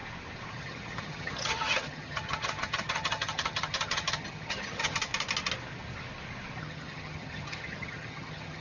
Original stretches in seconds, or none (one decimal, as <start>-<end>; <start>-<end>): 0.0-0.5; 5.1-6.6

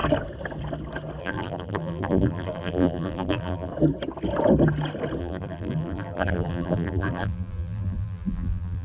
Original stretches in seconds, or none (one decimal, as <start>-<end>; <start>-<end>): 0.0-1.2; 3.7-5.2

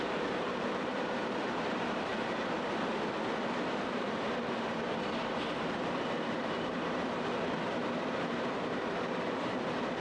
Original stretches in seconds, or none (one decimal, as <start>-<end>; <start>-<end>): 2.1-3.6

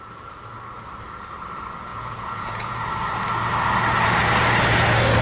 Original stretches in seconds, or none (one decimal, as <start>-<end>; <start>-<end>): 0.0-1.9; 2.7-5.2

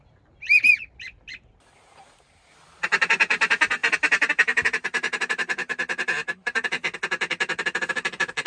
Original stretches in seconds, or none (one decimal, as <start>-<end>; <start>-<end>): 0.0-8.5

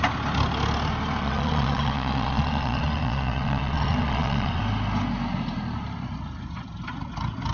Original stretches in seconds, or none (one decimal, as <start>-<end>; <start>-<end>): 0.0-1.2; 4.6-7.5